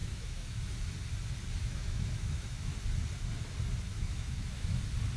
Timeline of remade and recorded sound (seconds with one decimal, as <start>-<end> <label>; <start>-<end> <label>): 0.0-0.6 remade; 0.6-1.6 recorded; 1.6-2.7 remade; 2.7-3.9 recorded; 3.9-4.8 remade; 4.8-5.2 recorded